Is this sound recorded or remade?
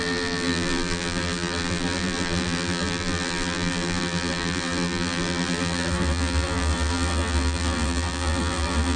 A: remade